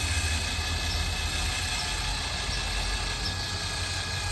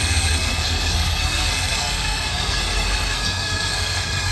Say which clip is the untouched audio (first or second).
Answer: first